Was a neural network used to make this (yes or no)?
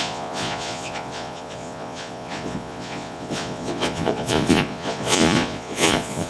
yes